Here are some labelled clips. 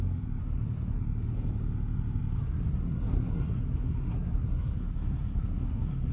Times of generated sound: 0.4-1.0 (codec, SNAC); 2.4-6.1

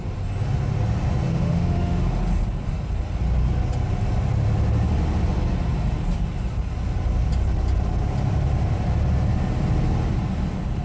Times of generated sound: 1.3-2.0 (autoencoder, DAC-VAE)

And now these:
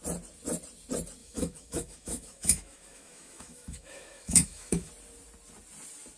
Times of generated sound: 1.2-4.9 (autoencoder, DAC-VAE)

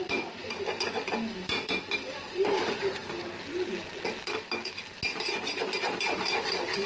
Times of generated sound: none